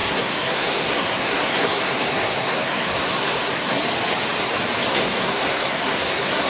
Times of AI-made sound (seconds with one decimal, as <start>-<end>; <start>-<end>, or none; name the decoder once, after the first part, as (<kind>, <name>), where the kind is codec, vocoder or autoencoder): 0.0-3.8 (codec, SNAC); 4.9-6.5

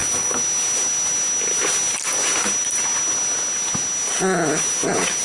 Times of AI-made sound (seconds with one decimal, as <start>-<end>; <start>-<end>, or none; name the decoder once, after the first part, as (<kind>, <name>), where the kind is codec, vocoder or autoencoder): none

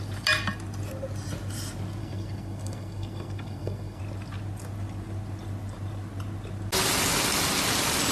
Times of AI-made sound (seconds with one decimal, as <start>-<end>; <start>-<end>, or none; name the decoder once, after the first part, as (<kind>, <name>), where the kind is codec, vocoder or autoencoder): 2.0-4.0 (codec, SNAC)

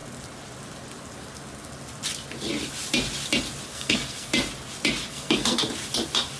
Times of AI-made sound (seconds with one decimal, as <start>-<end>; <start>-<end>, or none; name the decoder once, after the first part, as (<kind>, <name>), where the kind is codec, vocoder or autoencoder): 3.7-4.3 (codec, SNAC); 5.1-5.6

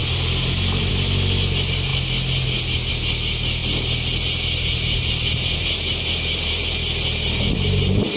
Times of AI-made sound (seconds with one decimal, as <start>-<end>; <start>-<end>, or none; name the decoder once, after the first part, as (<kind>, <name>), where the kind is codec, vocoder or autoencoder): 0.0-0.9 (vocoder, BigVGAN v2); 3.6-6.7

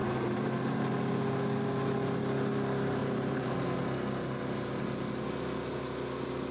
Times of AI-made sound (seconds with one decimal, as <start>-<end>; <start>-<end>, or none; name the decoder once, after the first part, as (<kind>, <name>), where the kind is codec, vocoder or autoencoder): 0.0-0.9 (vocoder, BigVGAN v2); 3.0-3.5

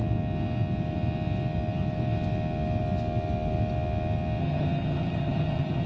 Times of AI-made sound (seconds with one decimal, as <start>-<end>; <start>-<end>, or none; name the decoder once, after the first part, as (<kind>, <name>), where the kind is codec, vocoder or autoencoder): 4.4-5.9 (vocoder, HiFi-GAN)

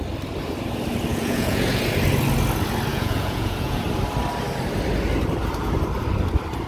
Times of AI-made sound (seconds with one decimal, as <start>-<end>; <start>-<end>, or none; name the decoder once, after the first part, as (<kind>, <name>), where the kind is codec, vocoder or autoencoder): 1.1-1.8 (vocoder, Vocos); 2.9-3.8